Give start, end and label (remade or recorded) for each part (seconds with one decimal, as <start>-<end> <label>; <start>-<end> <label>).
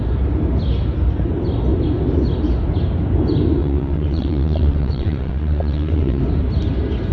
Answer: 0.0-3.6 recorded; 3.6-6.2 remade; 6.2-7.1 recorded